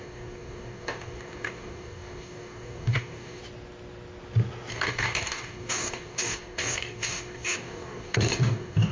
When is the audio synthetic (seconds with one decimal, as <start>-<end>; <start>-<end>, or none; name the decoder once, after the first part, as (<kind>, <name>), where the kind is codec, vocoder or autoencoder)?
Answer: 0.0-3.4 (codec, DAC); 4.7-8.9